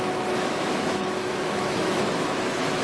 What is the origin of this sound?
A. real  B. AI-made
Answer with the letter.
B